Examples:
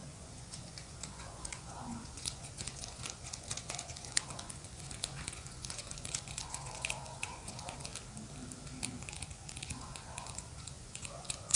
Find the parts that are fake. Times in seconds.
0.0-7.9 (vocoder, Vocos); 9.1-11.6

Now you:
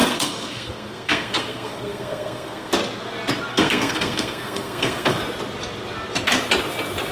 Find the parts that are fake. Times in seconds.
0.0-2.7 (codec, SNAC); 3.5-5.2

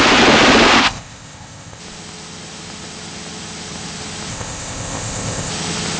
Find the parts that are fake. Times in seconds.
0.8-1.8 (codec, ZipCodec); 4.3-5.5